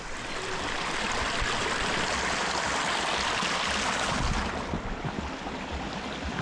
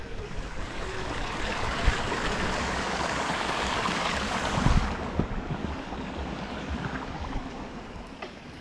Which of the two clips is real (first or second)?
first